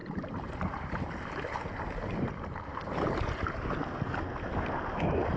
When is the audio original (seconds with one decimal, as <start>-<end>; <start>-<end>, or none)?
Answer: 3.2-5.4